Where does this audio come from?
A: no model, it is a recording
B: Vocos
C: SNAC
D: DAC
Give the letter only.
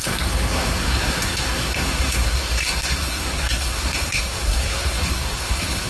C